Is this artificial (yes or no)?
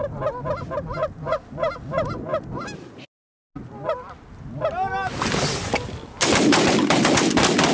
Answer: no